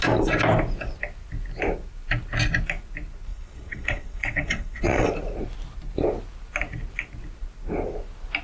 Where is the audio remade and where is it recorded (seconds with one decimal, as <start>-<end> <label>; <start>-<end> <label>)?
0.0-3.3 recorded; 3.3-5.1 remade; 5.1-8.4 recorded